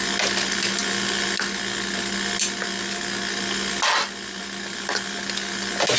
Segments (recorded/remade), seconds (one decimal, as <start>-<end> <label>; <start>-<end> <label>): 0.0-6.0 recorded